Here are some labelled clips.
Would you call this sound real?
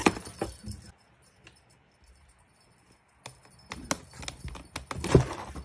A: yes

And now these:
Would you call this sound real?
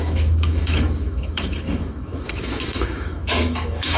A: no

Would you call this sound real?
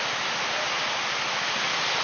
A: yes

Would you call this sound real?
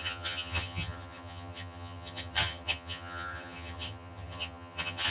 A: no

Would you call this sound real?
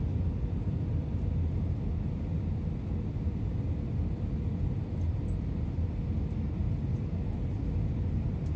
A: yes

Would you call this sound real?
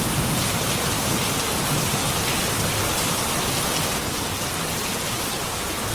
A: yes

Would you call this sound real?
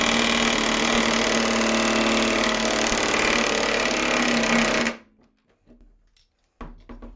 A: yes